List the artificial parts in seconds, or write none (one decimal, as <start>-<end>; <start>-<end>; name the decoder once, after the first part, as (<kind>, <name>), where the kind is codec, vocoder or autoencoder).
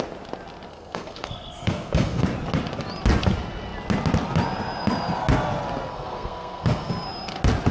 0.7-2.2 (codec, SNAC); 5.9-6.9